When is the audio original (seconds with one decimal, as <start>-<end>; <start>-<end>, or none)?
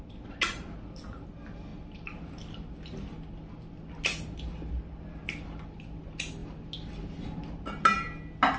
0.0-8.6